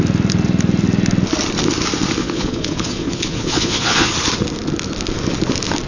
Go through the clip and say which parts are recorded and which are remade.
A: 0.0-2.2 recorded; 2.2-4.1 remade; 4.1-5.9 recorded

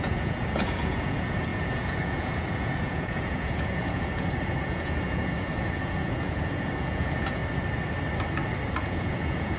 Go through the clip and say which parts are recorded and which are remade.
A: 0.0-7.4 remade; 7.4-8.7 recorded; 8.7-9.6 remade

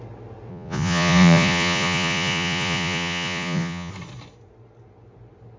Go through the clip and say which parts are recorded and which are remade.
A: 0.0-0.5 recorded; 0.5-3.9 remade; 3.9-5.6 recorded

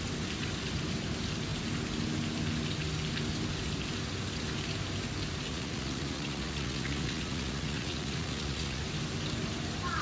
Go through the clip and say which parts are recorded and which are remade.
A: 0.0-5.5 recorded; 5.5-8.8 remade; 8.8-10.0 recorded

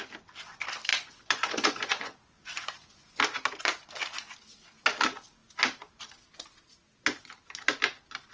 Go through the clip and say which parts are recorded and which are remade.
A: 0.0-0.9 recorded; 0.9-3.2 remade; 3.2-8.3 recorded

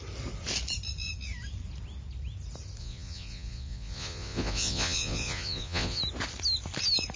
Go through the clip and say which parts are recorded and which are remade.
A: 0.0-2.8 recorded; 2.8-6.0 remade; 6.0-7.2 recorded